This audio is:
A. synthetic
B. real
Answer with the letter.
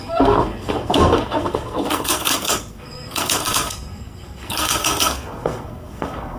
A